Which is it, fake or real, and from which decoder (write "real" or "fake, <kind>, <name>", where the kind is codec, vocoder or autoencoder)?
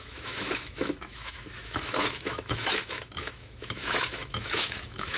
fake, autoencoder, DAC-VAE